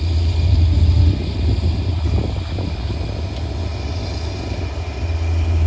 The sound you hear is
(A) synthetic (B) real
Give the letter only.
B